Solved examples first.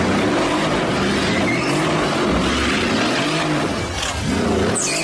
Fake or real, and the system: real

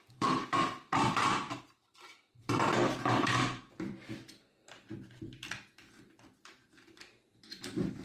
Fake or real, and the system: fake, vocoder, BigVGAN v2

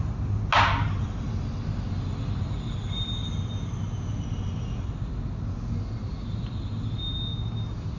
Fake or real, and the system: real